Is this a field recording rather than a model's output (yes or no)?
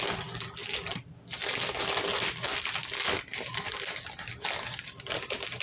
yes